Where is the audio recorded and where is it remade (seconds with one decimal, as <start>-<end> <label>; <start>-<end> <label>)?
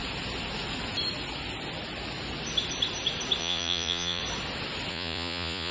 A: 0.0-3.4 recorded; 3.4-4.2 remade; 4.2-4.9 recorded; 4.9-5.7 remade